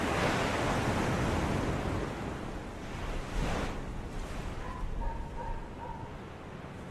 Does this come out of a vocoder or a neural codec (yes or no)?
no